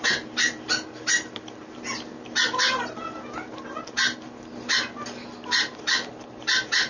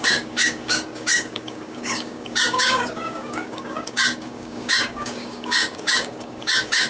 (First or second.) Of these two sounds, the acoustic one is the first